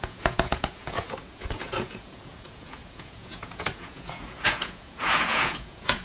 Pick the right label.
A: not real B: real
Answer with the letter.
A